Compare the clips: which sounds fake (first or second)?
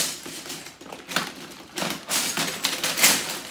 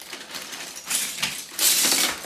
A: second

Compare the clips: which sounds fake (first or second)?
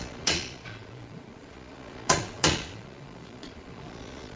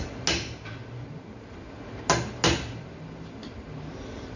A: first